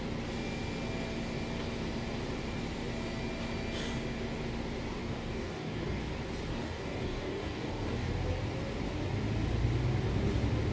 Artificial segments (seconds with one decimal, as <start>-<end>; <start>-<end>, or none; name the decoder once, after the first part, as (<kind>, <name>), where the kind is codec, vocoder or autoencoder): 5.0-6.1 (codec, DAC); 6.5-8.1